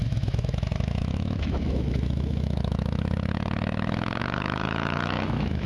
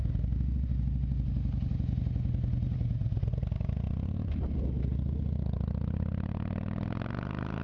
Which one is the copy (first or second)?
first